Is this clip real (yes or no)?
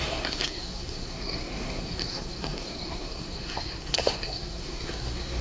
no